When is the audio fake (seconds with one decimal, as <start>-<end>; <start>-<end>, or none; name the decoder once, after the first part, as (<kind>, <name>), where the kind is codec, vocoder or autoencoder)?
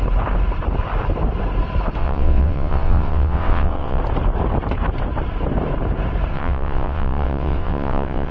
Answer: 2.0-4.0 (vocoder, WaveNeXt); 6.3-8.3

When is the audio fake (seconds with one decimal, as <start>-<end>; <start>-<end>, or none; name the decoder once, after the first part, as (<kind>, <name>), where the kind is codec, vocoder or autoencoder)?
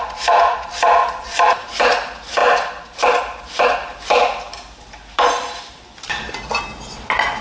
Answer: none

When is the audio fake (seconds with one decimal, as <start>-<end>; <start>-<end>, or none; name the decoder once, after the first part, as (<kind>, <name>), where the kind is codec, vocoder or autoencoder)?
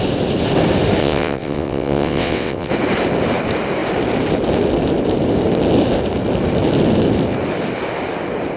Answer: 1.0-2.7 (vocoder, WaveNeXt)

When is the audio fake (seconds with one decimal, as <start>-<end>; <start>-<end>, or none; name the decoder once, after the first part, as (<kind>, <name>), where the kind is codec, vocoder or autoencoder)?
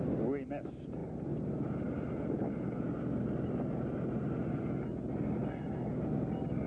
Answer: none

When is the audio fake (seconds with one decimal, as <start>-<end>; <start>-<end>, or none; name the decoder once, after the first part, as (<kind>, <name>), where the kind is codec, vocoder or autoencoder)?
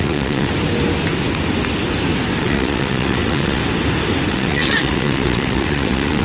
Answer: 0.0-0.5 (vocoder, WaveNeXt); 2.4-3.6; 4.3-6.2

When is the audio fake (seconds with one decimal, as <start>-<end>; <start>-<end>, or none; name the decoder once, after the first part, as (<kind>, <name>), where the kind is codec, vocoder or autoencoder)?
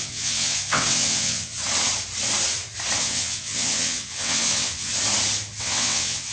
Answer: 0.0-1.6 (vocoder, WaveNeXt); 3.0-4.9; 5.6-6.3